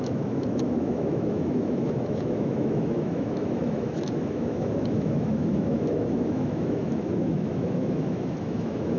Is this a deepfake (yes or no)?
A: yes